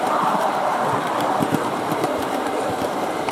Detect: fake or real fake